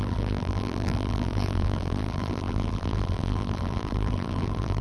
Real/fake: fake